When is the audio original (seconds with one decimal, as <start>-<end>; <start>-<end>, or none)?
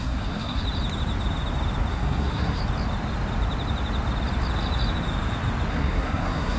0.6-1.9; 2.6-5.7